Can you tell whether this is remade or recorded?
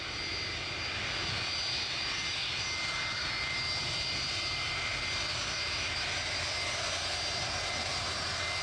recorded